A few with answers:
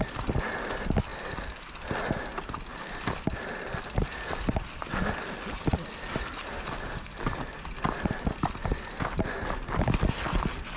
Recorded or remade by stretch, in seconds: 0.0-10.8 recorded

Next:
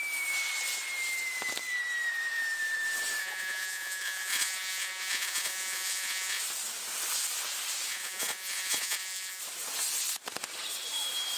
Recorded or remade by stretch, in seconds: 0.0-3.2 recorded; 3.2-6.4 remade; 6.4-7.9 recorded; 7.9-9.4 remade; 9.4-11.4 recorded

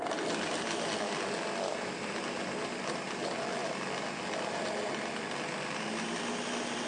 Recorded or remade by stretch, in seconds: 0.0-6.9 recorded

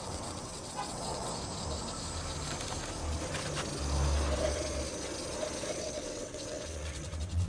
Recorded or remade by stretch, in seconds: 0.0-1.3 remade; 1.3-5.8 recorded; 5.8-7.5 remade

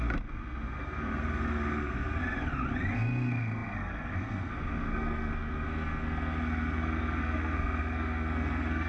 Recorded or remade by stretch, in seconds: 0.0-2.2 remade; 2.2-2.9 recorded; 2.9-8.9 remade

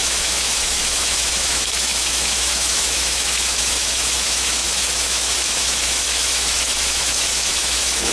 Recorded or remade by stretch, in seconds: 0.0-8.1 remade

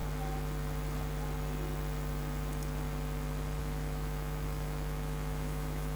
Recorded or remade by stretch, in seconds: 0.0-3.6 recorded; 3.6-6.0 remade